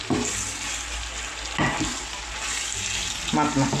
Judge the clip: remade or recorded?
recorded